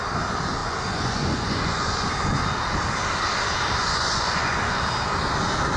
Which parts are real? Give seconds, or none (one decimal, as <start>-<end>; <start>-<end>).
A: 0.0-0.6; 2.1-3.8; 4.8-5.8